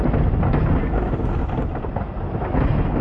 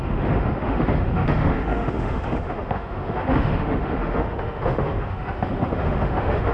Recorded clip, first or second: first